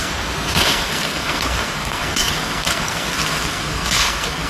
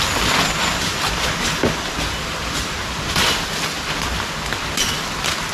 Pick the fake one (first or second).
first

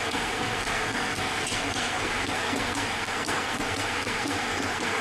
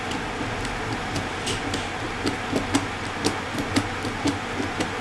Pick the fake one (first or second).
first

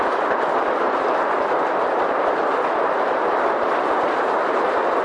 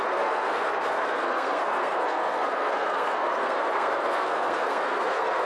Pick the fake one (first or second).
second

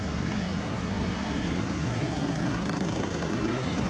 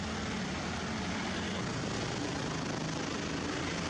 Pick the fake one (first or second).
first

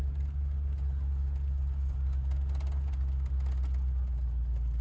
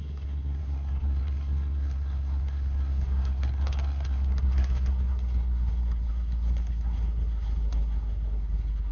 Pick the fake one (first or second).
second